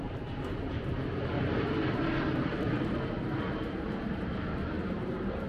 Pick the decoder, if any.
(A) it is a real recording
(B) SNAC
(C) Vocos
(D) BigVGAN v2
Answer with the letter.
D